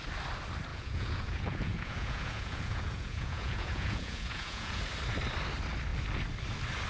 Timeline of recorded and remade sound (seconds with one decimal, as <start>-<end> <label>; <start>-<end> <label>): 0.0-0.7 recorded; 0.7-4.8 remade; 4.8-6.9 recorded